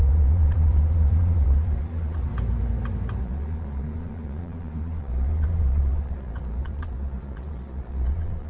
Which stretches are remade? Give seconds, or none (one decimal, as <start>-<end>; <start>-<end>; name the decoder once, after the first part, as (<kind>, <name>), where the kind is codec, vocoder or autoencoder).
0.0-2.3 (vocoder, Vocos); 3.2-8.5